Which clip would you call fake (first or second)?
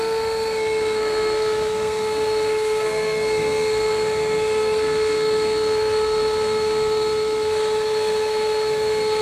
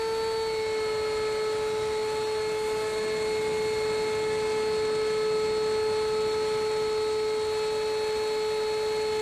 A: first